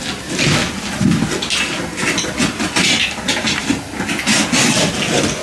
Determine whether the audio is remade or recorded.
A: recorded